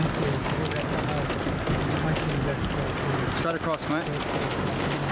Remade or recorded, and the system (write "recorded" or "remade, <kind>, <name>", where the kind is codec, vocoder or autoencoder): recorded